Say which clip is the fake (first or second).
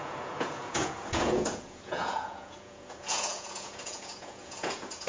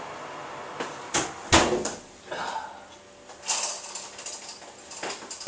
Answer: first